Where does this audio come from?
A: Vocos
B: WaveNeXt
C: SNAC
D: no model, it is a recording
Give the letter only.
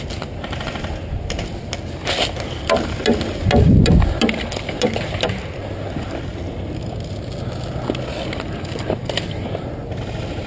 D